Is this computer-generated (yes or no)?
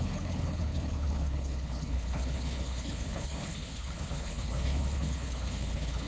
yes